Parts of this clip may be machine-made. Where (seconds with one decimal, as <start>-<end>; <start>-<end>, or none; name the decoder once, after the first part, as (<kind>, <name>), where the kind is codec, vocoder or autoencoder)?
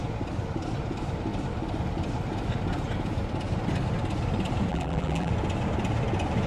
4.7-5.3 (vocoder, BigVGAN v2)